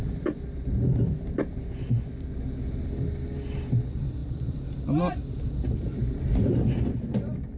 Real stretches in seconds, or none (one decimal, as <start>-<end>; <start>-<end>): 0.0-7.6